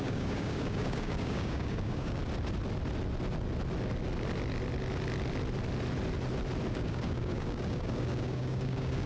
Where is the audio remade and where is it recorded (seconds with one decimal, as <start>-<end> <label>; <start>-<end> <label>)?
0.0-2.2 remade; 2.2-6.7 recorded; 6.7-9.1 remade